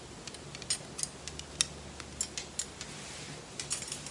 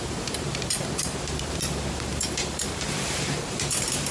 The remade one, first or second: second